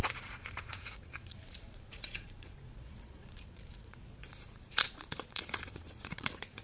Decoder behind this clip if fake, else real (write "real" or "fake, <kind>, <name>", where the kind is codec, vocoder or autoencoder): fake, vocoder, Vocos